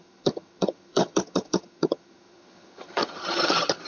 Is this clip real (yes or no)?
no